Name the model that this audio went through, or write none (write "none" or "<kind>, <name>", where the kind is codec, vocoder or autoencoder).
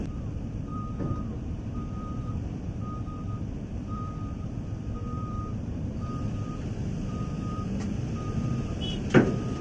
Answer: vocoder, BigVGAN v2